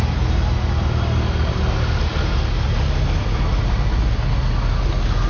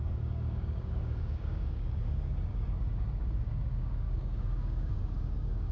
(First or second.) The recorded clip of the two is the first